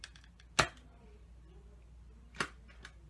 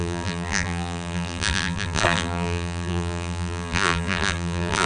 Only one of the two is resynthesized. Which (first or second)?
second